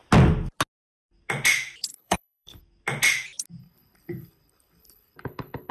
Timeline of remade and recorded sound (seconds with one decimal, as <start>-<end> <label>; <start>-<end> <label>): 0.0-1.9 recorded; 1.9-2.6 remade; 2.6-3.6 recorded; 3.6-5.7 remade